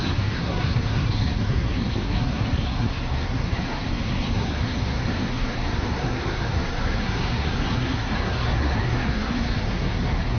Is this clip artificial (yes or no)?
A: yes